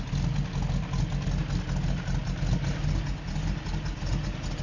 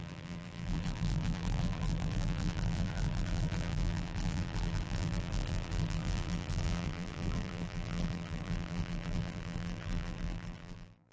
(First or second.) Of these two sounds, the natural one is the first